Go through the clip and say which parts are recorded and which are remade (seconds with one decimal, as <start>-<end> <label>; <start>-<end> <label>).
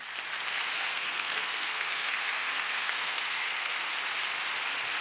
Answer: 0.0-0.9 recorded; 0.9-3.9 remade; 3.9-5.0 recorded